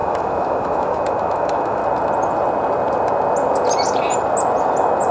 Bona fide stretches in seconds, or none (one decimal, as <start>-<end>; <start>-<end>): 1.8-5.1